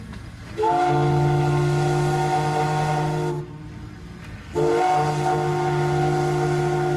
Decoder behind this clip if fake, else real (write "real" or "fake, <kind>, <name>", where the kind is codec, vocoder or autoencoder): real